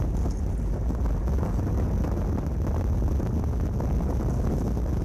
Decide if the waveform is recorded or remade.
recorded